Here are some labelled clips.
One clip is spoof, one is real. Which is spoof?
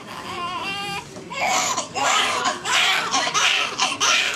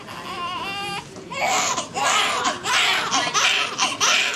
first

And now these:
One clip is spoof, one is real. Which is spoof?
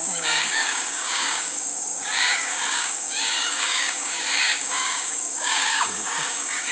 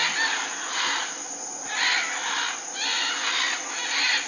first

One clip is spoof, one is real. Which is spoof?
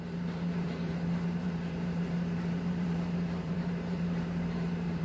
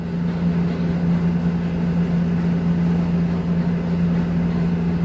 first